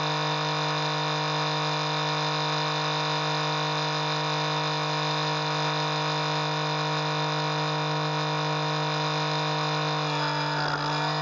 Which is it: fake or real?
real